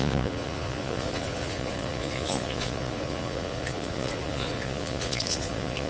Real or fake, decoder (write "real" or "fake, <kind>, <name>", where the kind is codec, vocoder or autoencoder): fake, vocoder, Vocos